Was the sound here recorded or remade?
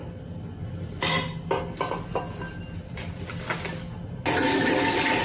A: recorded